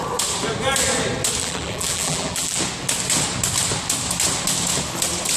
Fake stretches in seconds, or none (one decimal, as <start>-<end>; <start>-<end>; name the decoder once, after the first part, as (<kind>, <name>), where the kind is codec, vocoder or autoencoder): 1.4-2.6 (vocoder, BigVGAN v2)